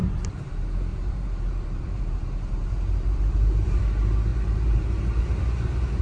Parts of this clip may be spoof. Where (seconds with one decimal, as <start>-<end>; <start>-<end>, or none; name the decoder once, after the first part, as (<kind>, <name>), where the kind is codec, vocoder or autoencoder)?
0.0-0.5 (vocoder, BigVGAN v2); 0.9-3.8; 4.3-5.4